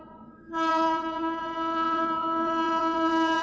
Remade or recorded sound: remade